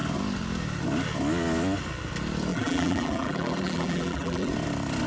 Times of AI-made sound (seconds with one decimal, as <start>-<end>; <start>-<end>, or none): 2.5-4.5